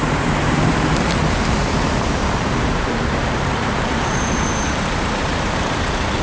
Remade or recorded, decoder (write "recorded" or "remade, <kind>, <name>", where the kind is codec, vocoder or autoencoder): remade, vocoder, BigVGAN v2